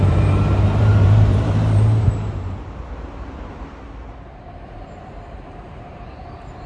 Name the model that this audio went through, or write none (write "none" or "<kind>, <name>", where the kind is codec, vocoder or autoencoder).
vocoder, BigVGAN v2